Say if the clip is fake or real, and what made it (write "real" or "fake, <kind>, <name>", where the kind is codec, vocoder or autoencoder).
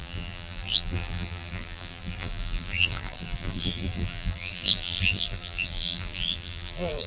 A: fake, vocoder, BigVGAN v2